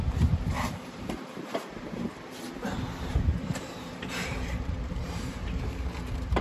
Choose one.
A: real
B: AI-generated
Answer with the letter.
B